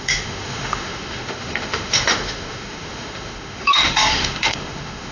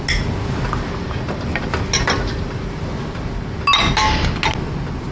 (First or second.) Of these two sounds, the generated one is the first